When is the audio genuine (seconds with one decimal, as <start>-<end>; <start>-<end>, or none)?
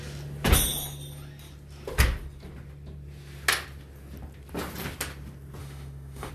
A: 0.0-5.6